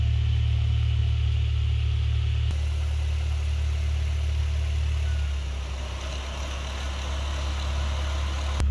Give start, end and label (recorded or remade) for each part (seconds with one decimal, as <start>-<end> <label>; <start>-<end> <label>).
0.0-8.7 recorded